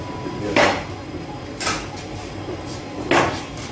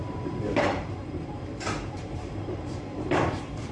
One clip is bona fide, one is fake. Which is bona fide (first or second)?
first